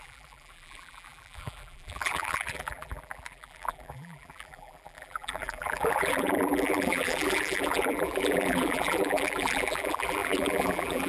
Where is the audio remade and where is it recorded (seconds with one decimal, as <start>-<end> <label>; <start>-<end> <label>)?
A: 0.0-11.1 remade